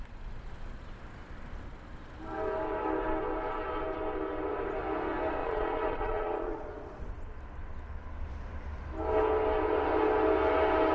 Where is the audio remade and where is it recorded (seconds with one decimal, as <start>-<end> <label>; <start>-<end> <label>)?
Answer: 0.0-5.4 recorded; 5.4-7.0 remade; 7.0-10.9 recorded